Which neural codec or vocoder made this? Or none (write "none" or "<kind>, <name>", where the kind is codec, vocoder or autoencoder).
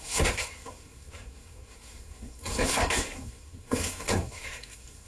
codec, SNAC